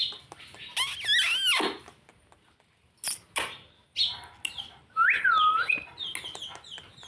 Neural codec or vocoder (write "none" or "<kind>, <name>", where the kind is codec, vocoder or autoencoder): none